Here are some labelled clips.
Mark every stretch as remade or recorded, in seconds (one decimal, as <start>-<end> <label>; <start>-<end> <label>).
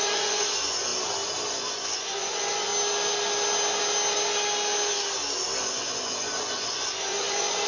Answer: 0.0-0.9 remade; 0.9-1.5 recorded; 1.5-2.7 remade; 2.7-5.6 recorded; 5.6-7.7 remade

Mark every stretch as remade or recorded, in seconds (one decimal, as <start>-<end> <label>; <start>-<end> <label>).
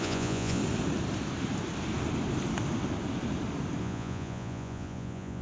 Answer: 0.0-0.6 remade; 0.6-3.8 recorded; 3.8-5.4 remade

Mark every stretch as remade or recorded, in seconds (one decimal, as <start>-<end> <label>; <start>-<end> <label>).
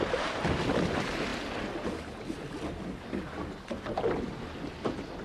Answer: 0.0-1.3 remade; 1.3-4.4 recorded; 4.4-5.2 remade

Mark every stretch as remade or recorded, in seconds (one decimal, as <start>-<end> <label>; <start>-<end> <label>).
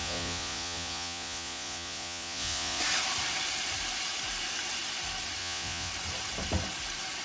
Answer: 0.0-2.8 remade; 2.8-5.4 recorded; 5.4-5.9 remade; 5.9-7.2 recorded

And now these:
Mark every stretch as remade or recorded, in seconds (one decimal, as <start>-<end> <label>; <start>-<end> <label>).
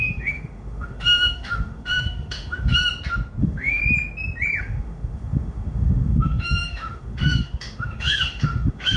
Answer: 0.0-2.8 remade; 2.8-3.4 recorded; 3.4-3.8 remade; 3.8-4.6 recorded; 4.6-9.0 remade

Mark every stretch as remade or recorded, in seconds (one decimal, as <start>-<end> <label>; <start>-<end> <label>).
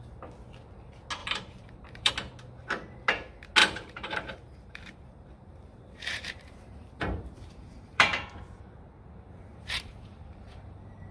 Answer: 0.0-1.2 recorded; 1.2-2.1 remade; 2.1-3.6 recorded; 3.6-8.6 remade; 8.6-9.5 recorded; 9.5-11.1 remade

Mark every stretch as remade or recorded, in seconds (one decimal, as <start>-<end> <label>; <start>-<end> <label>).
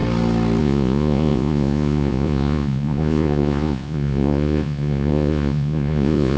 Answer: 0.0-0.6 recorded; 0.6-6.4 remade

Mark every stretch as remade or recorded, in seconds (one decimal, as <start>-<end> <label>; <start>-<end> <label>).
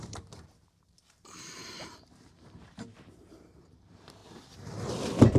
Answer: 0.0-4.2 remade; 4.2-5.4 recorded